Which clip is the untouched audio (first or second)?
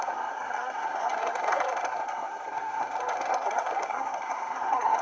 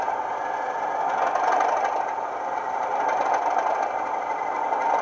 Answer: second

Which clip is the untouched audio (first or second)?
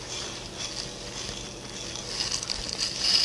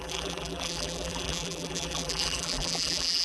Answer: first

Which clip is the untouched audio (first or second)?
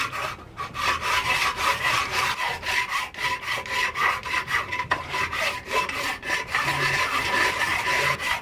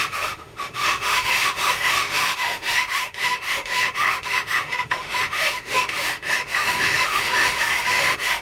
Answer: first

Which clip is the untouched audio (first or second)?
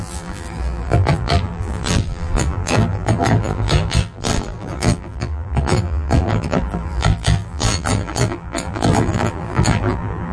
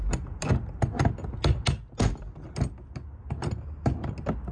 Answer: second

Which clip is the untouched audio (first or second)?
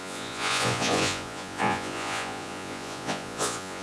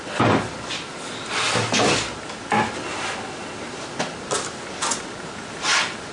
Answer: second